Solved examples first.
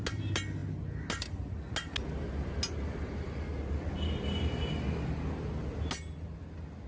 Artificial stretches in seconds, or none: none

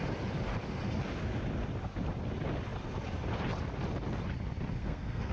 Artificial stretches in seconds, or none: 4.8-5.3 (codec, SNAC)

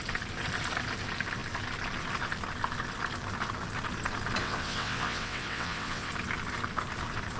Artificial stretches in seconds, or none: 4.4-6.1 (vocoder, WaveNeXt)